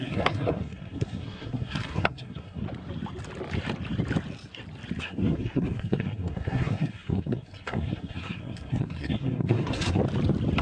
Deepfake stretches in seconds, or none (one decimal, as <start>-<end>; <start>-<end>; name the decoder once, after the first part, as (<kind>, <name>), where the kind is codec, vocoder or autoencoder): 0.0-2.6 (codec, SNAC); 5.0-10.0